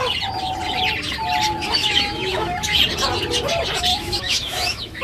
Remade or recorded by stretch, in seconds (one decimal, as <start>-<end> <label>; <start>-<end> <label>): 0.0-1.8 recorded; 1.8-2.8 remade; 2.8-3.9 recorded; 3.9-5.0 remade

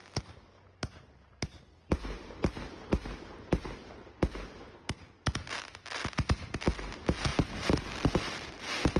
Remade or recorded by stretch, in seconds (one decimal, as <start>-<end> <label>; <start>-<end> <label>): 0.0-9.0 recorded

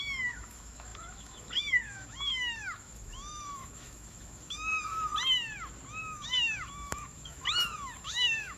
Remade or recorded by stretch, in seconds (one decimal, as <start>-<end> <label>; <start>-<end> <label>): 0.0-5.1 remade; 5.1-6.0 recorded; 6.0-8.6 remade

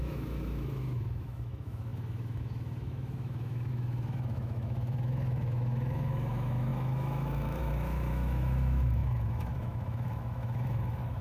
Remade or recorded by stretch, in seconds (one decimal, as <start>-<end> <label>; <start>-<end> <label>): 0.0-11.2 remade

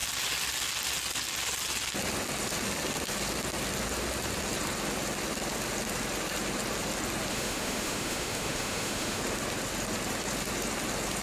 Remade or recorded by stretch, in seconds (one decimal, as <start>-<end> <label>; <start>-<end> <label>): 0.0-7.3 recorded; 7.3-9.2 remade; 9.2-11.2 recorded

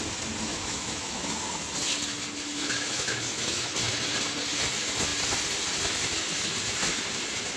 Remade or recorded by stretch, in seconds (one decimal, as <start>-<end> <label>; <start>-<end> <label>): 0.0-0.5 recorded; 0.5-1.4 remade; 1.4-2.5 recorded; 2.5-3.7 remade; 3.7-7.6 recorded

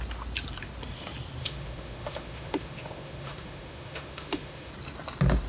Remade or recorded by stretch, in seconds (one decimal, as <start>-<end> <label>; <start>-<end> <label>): 0.0-1.4 recorded; 1.4-4.7 remade; 4.7-5.5 recorded

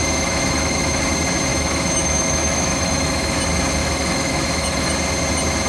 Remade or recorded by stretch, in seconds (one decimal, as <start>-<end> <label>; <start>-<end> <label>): 0.0-1.0 remade; 1.0-1.5 recorded; 1.5-3.4 remade; 3.4-3.8 recorded; 3.8-4.9 remade; 4.9-5.7 recorded